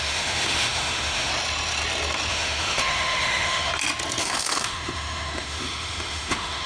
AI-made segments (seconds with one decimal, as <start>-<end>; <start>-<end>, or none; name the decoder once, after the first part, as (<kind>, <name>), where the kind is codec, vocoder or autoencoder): 0.0-1.3 (autoencoder, DAC-VAE); 2.3-3.7; 4.2-6.7